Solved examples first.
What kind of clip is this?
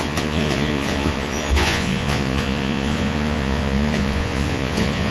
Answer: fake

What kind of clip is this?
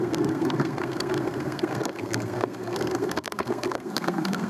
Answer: fake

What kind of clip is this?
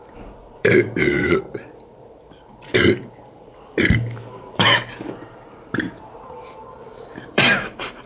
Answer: fake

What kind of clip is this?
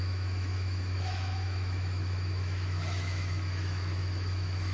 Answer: fake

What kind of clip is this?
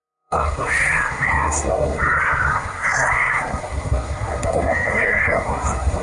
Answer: fake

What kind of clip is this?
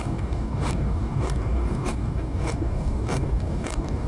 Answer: fake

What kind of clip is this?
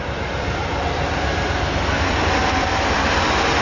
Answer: real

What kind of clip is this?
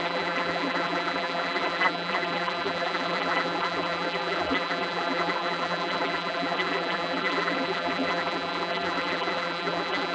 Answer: fake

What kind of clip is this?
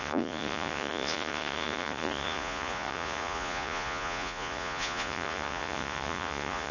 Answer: fake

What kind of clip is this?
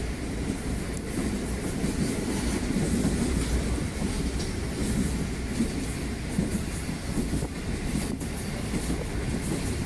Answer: real